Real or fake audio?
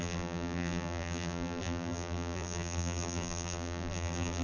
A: fake